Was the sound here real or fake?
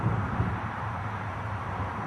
fake